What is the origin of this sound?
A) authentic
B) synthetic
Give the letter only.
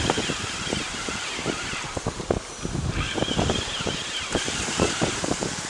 B